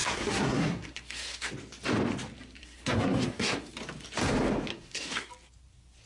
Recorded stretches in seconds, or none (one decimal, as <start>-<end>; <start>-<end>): 1.5-2.6; 3.7-4.7; 5.3-6.1